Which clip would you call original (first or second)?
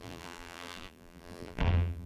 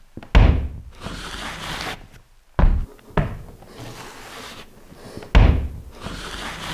second